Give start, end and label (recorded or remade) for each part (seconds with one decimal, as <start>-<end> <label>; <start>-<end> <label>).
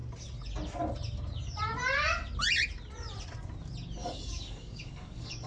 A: 0.0-4.0 recorded; 4.0-5.5 remade